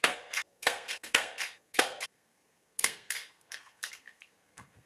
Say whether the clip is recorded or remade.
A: remade